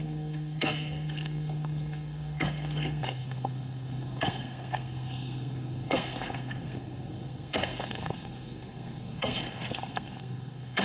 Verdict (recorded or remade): remade